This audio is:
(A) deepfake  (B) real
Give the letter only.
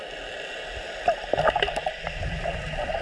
B